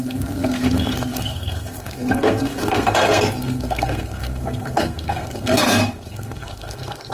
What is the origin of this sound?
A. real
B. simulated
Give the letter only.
B